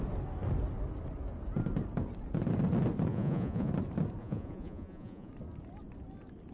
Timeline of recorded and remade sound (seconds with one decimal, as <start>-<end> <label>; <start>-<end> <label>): 0.0-3.1 recorded; 3.1-3.7 remade; 3.7-4.2 recorded; 4.2-5.3 remade; 5.3-6.5 recorded